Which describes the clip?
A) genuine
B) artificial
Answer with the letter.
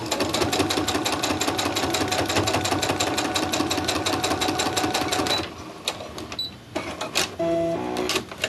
A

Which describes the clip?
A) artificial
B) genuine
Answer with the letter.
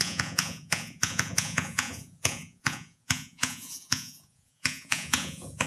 A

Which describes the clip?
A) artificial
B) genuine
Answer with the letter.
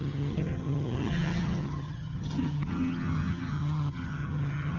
A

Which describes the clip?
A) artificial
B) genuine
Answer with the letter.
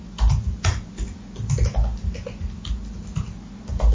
B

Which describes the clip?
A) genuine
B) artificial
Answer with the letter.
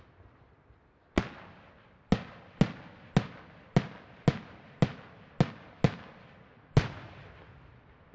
A